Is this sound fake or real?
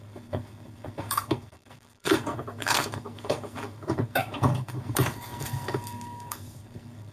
fake